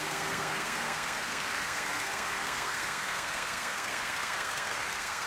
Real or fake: fake